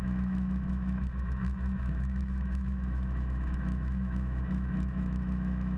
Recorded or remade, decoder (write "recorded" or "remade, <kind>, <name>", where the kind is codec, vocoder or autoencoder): remade, autoencoder, DAC-VAE